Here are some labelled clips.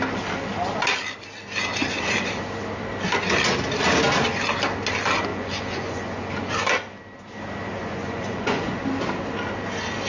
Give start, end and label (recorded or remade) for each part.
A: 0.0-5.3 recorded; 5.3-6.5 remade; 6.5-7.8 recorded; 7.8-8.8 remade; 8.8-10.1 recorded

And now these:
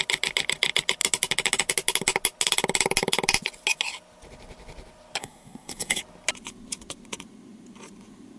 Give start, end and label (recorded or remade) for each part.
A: 0.0-5.2 recorded; 5.2-6.0 remade; 6.0-8.4 recorded